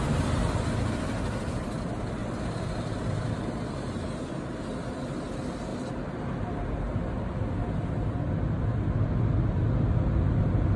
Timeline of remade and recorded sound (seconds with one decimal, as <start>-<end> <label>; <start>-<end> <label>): 0.0-2.2 recorded; 2.2-4.3 remade; 4.3-5.7 recorded; 5.7-7.4 remade; 7.4-10.8 recorded